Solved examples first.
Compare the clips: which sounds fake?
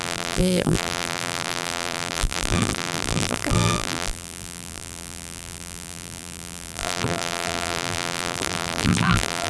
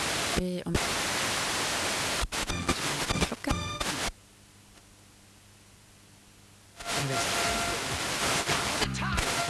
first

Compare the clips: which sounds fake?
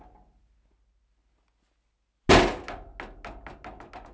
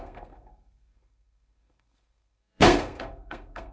second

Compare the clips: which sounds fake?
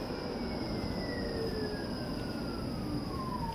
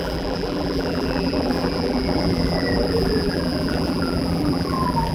second